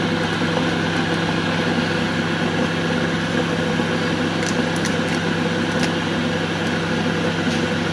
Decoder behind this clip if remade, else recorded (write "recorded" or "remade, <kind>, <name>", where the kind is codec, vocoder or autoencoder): recorded